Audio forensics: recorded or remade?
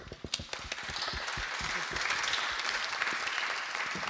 recorded